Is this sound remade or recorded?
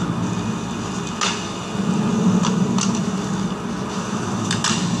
recorded